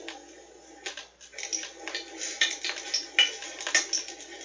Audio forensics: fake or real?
real